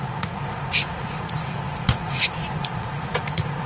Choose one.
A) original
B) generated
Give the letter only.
B